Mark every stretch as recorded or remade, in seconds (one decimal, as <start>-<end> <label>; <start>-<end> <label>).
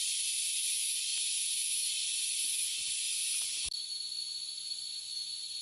0.0-5.6 recorded